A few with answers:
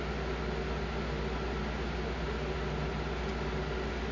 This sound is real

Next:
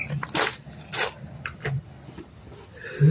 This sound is real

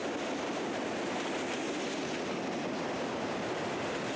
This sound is real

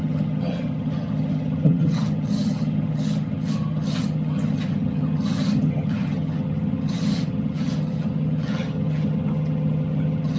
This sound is fake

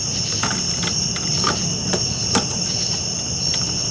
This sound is real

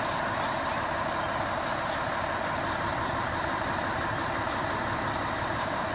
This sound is real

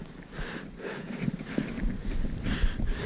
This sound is real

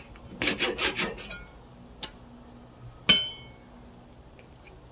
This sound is real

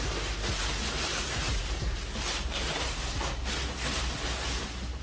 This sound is real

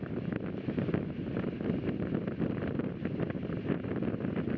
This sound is real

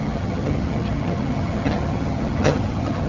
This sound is fake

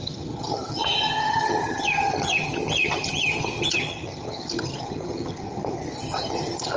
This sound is fake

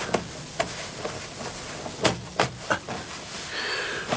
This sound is real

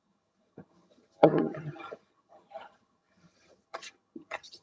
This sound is fake